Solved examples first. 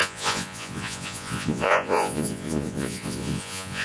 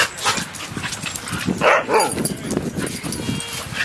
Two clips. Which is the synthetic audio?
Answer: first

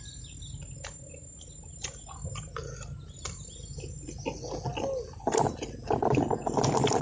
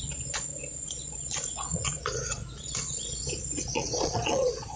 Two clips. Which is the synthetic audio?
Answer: second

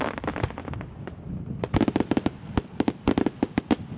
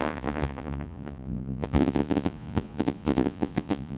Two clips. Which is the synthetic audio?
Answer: second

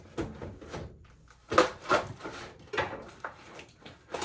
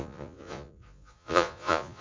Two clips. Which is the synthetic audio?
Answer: second